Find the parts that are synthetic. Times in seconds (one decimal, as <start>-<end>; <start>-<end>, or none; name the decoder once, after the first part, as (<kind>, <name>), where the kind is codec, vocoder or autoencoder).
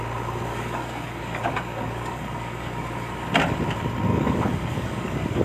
0.5-3.1 (codec, DAC); 4.1-5.4